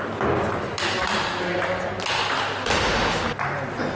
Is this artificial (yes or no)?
no